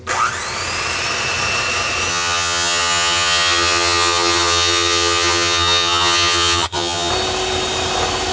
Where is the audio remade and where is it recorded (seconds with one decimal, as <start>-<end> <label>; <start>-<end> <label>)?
0.0-2.1 recorded; 2.1-7.1 remade; 7.1-8.3 recorded